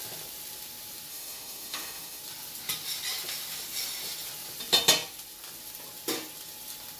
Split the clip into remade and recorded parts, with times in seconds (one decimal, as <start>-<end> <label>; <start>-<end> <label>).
0.0-1.1 recorded; 1.1-2.2 remade; 2.2-7.0 recorded